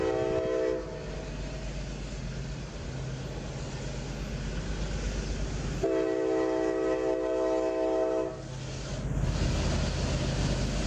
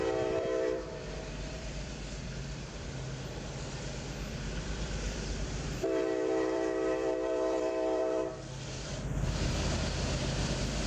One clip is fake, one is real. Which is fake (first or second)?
second